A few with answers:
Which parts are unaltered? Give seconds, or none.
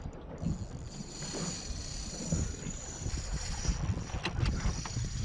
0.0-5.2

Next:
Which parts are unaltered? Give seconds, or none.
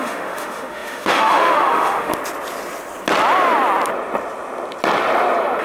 2.1-5.6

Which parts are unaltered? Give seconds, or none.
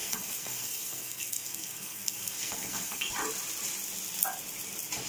3.1-5.1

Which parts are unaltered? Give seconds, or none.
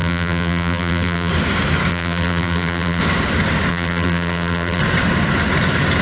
1.3-1.9; 3.0-3.7; 4.8-6.0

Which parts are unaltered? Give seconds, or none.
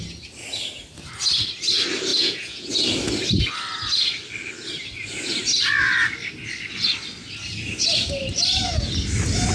0.0-2.1; 2.7-9.5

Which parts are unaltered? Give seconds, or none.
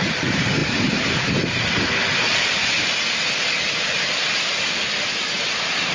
0.0-5.9